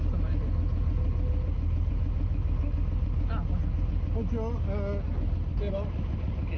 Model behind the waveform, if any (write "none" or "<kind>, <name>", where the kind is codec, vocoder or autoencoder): none